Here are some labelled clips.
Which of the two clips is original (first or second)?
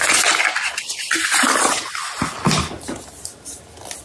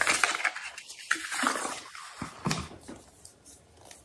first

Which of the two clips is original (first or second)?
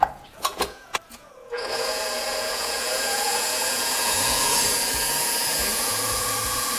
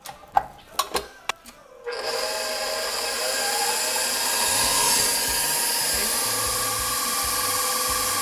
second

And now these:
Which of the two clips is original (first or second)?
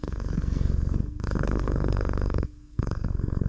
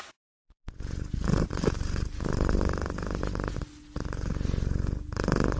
second